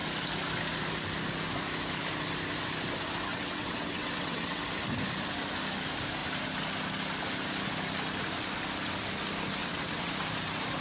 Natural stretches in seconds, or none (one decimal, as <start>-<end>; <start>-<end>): 0.0-3.3; 4.6-9.6; 10.1-10.8

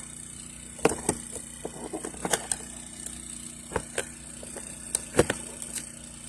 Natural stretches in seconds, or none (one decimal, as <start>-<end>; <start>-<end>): 0.0-6.3

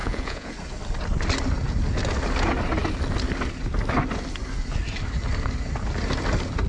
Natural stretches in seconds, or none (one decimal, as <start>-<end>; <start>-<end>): 0.5-6.7

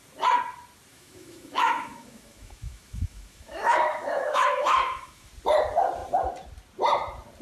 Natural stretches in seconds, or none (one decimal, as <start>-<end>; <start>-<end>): 0.0-0.9; 5.3-7.4

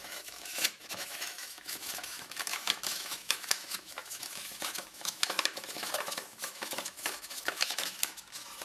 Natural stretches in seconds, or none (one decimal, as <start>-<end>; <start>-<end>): none